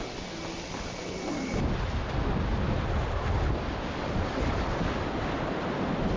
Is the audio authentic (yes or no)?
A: yes